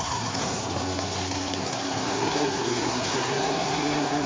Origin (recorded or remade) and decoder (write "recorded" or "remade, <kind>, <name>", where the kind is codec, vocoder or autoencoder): remade, codec, SNAC